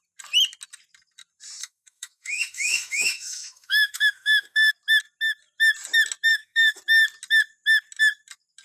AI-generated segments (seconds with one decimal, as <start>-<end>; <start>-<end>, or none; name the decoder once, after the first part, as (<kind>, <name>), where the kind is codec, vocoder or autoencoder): 1.6-4.7 (autoencoder, DAC-VAE); 6.3-6.8